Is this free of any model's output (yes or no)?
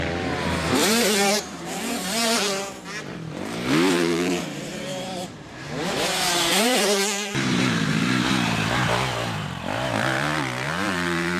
no